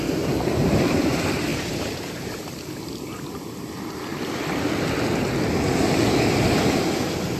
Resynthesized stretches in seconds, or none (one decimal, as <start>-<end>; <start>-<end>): 0.6-1.1; 1.5-2.3; 4.1-4.7